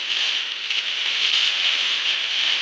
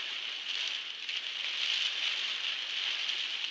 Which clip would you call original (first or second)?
second